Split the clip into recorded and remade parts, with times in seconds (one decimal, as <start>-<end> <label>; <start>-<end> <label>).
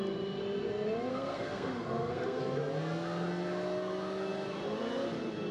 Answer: 0.0-1.1 recorded; 1.1-2.4 remade; 2.4-5.5 recorded